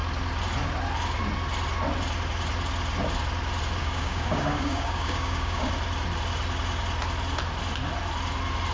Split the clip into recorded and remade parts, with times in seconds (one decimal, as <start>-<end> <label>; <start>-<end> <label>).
0.0-3.8 recorded; 3.8-5.7 remade; 5.7-8.7 recorded